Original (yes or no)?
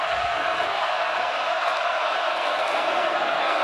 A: no